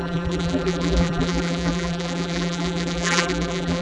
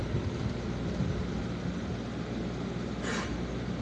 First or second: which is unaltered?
second